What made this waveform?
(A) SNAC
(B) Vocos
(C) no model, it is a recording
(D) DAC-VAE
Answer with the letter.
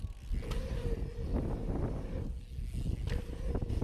C